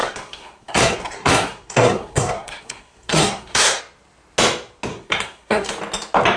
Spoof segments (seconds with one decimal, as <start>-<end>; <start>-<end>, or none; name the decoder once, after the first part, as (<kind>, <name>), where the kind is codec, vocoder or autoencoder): 0.0-3.8 (codec, SNAC); 4.9-5.7